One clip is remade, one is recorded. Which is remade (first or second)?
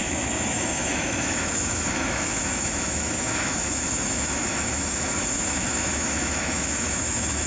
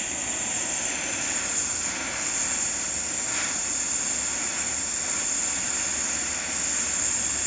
first